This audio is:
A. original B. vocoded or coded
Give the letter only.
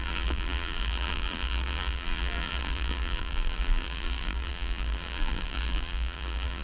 B